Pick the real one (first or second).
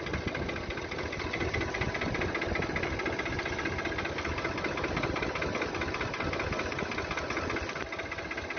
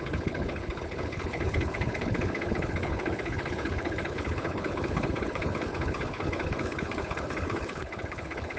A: first